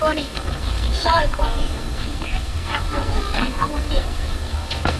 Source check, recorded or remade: remade